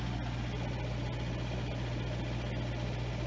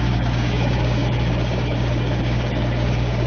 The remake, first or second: second